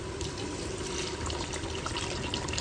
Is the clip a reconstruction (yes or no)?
no